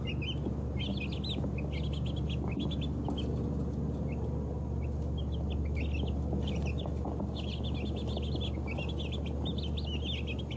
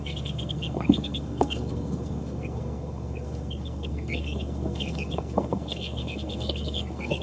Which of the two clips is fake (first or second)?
second